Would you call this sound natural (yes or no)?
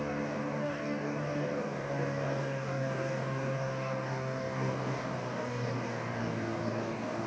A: no